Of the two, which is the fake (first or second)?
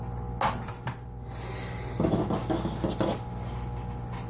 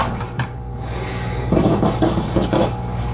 second